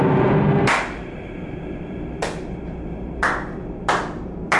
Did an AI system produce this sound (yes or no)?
no